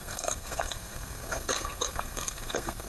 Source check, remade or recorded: remade